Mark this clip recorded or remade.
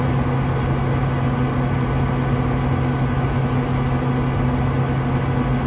recorded